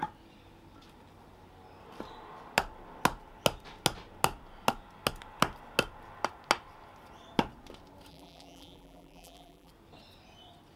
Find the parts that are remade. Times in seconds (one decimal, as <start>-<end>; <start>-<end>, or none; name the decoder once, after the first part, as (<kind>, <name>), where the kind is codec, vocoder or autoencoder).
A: 8.1-9.7 (vocoder, BigVGAN v2)